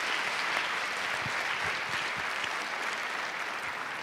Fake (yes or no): no